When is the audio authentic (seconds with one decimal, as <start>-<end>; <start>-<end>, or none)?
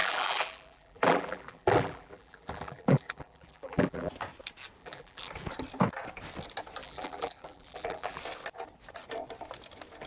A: 4.1-4.8; 5.3-6.8; 8.2-10.1